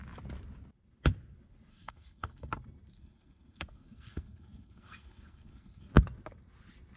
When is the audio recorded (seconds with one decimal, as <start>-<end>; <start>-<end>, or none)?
0.0-1.7; 2.5-2.9; 5.9-7.0